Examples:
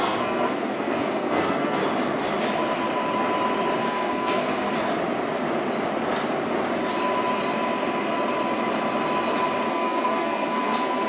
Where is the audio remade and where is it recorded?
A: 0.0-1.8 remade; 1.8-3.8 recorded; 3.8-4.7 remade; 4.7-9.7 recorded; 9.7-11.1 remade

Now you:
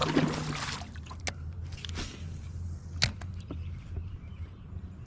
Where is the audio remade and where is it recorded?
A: 0.0-3.1 recorded; 3.1-5.1 remade